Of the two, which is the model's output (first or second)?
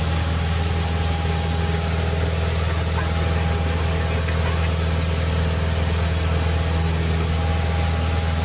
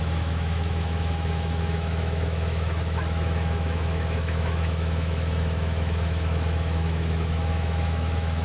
second